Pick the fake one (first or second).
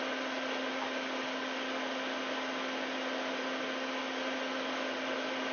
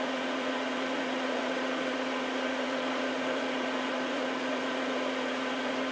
second